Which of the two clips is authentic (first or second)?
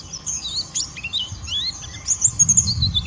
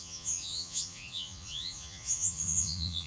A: first